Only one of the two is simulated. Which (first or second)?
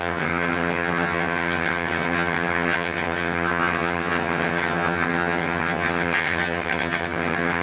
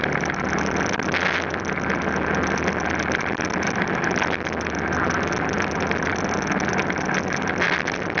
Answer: first